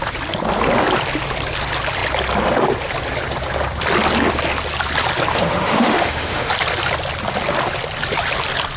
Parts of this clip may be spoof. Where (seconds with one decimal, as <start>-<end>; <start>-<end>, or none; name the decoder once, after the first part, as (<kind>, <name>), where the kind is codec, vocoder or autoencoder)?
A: 5.3-6.5 (autoencoder, DAC-VAE)